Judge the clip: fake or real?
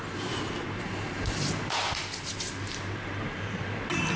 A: real